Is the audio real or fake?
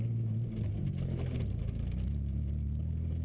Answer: real